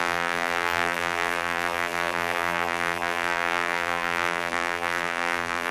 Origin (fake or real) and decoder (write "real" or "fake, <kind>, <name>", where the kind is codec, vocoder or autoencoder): fake, vocoder, BigVGAN v2